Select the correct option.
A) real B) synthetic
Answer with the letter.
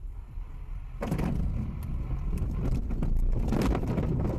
A